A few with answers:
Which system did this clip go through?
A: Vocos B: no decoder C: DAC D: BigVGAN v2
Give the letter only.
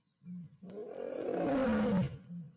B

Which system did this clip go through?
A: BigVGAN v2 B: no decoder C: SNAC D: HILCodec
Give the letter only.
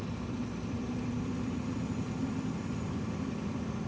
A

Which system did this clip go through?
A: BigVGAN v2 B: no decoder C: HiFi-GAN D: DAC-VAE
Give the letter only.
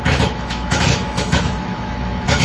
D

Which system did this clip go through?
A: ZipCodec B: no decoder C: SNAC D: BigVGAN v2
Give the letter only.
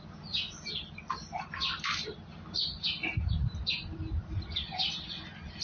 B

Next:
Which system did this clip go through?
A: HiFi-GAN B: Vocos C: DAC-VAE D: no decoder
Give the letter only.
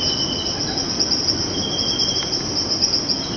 D